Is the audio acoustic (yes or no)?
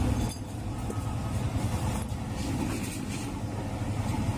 yes